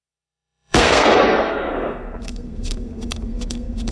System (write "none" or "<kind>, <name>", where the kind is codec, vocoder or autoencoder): codec, SNAC